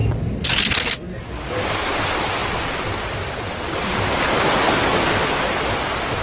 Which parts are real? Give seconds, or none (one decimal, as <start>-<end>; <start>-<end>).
0.0-6.2